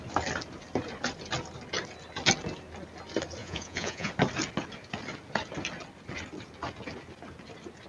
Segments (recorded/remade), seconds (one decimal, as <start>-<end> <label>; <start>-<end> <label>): 0.0-3.4 recorded; 3.4-4.1 remade; 4.1-7.9 recorded